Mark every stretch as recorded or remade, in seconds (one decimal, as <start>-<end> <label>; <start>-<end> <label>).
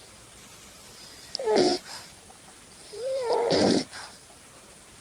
0.0-1.7 recorded; 1.7-5.0 remade